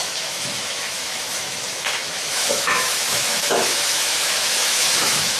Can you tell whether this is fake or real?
fake